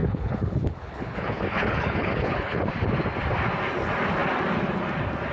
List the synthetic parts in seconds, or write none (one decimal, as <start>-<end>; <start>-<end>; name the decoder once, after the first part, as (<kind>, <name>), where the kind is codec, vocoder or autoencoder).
0.0-2.7 (codec, HILCodec)